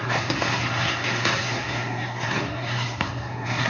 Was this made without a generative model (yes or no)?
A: no